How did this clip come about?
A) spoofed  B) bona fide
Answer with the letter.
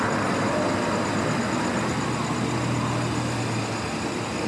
B